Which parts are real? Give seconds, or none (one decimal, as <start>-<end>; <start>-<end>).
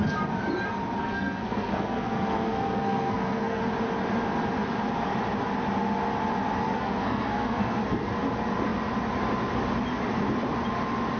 0.0-1.0; 3.6-6.6; 8.1-11.2